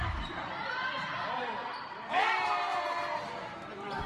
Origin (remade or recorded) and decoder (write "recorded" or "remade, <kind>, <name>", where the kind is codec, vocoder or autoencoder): recorded